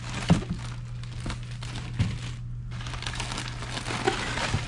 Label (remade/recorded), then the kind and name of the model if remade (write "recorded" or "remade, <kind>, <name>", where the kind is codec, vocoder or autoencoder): recorded